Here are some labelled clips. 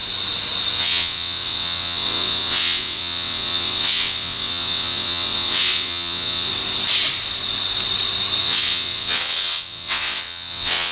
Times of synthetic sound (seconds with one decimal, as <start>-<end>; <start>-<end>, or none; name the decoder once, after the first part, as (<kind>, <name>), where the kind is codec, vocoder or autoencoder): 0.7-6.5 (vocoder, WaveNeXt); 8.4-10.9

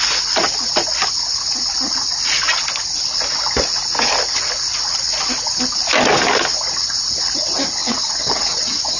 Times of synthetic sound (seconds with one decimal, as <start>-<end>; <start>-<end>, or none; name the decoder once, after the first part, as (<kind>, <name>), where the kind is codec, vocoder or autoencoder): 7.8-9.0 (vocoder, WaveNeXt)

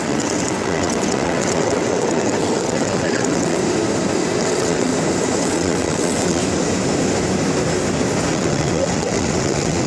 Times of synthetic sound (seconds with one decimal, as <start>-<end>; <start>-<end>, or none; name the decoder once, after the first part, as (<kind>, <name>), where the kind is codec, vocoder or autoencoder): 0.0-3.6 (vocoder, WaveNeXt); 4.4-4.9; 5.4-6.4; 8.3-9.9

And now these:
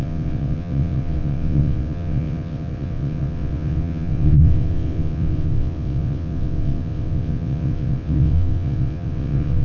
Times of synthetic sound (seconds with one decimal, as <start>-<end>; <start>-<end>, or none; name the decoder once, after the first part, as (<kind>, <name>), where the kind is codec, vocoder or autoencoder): 0.0-9.6 (vocoder, WaveNeXt)

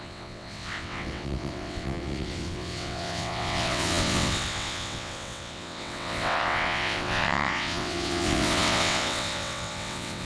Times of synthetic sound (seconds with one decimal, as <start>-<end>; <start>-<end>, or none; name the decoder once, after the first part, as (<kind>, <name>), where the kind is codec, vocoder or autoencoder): 0.0-10.2 (vocoder, WaveNeXt)